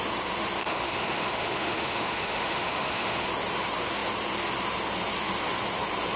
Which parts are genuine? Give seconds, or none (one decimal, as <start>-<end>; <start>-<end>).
0.0-0.6; 3.3-6.2